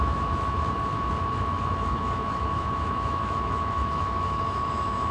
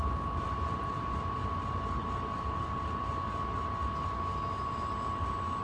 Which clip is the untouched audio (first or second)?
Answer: second